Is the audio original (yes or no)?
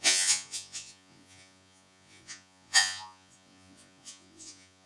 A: no